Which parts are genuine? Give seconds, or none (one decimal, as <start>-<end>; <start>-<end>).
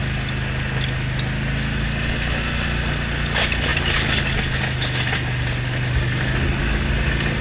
0.0-7.4